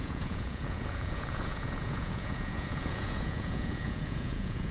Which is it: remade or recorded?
remade